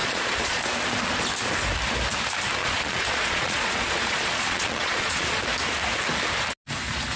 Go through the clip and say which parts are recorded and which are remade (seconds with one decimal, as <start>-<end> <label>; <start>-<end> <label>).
0.0-0.6 remade; 0.6-2.6 recorded; 2.6-5.4 remade; 5.4-7.2 recorded